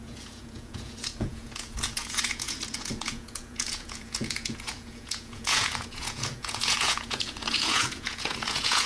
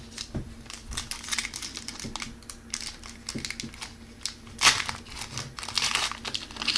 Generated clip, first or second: first